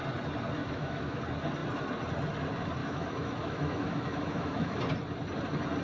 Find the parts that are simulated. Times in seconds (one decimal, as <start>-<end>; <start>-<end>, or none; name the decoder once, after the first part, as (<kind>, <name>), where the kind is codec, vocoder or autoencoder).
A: 0.6-1.2 (autoencoder, DAC-VAE); 2.8-4.9